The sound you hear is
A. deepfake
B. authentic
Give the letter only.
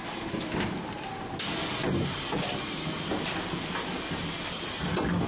B